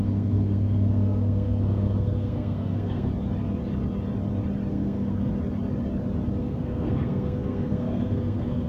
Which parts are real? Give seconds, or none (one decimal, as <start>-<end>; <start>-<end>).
3.1-4.7; 5.3-6.4